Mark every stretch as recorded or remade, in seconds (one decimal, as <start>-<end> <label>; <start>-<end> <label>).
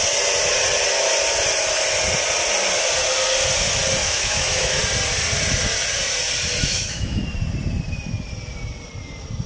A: 0.0-4.0 recorded; 4.0-4.8 remade; 4.8-6.6 recorded; 6.6-7.2 remade; 7.2-9.5 recorded